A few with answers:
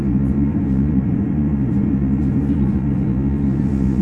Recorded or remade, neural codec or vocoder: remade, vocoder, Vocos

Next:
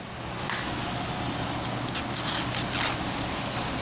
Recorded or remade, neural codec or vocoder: recorded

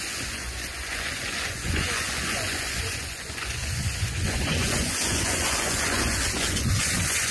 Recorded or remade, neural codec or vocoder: remade, vocoder, Vocos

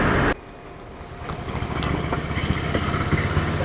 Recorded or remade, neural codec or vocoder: recorded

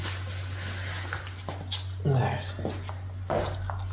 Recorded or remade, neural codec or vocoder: recorded